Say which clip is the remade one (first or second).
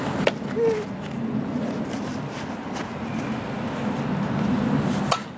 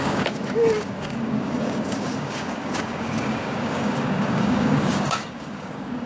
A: second